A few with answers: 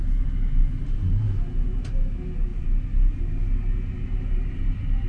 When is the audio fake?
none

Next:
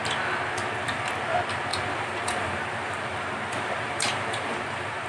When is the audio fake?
1.7-5.1 (vocoder, BigVGAN v2)

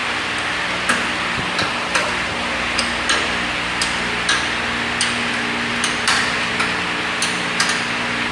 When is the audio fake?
5.7-6.5 (vocoder, BigVGAN v2)

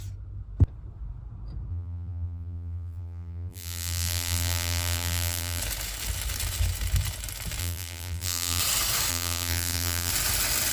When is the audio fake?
1.7-5.6 (vocoder, BigVGAN v2); 7.6-8.6; 9.1-10.1

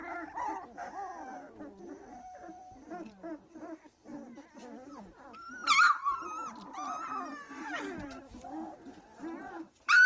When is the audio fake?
1.8-5.6 (vocoder, BigVGAN v2); 7.5-10.1